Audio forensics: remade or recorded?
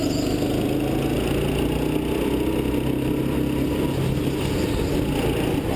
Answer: recorded